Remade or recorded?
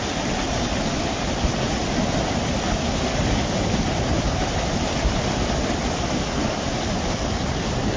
recorded